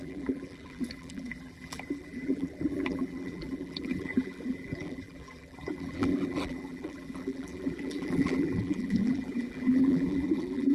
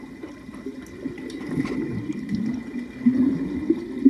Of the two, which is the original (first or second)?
second